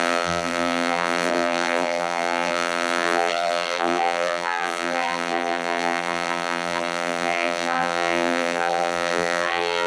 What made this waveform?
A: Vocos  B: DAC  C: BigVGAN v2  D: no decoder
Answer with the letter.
C